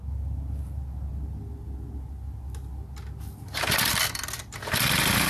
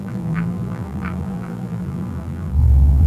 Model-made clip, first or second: second